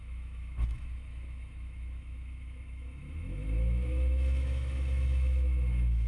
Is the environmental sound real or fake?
fake